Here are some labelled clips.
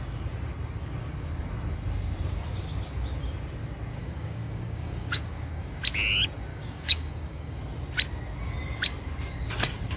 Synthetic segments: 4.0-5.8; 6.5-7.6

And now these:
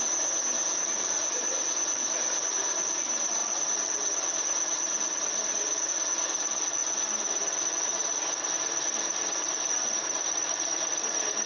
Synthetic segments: none

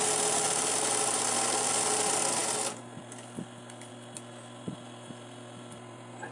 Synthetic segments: none

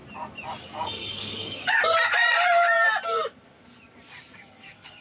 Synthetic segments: 0.6-1.8; 4.4-5.0